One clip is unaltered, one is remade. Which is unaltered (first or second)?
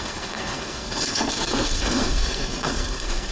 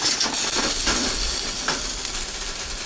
second